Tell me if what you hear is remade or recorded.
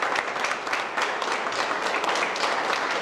recorded